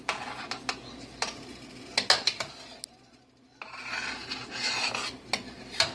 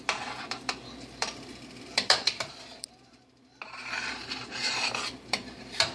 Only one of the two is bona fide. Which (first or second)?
first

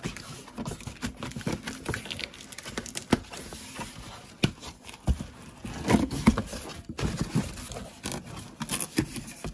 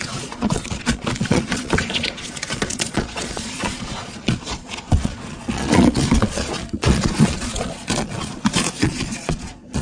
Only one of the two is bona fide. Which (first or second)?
first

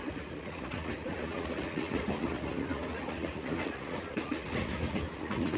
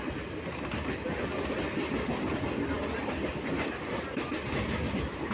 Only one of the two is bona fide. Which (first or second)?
second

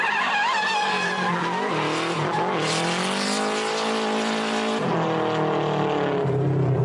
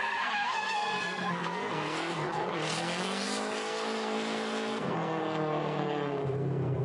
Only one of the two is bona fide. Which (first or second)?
first